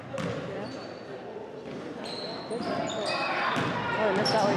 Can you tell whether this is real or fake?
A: real